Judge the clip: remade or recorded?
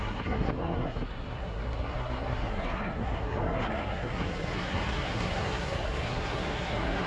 remade